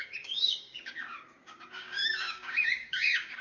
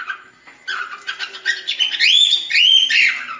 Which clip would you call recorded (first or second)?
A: second